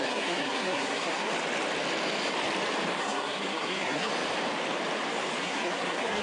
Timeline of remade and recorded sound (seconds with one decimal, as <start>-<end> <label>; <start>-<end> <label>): 0.0-1.3 remade; 1.3-3.0 recorded; 3.0-4.1 remade; 4.1-5.4 recorded; 5.4-6.2 remade